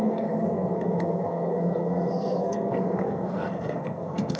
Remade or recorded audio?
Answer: remade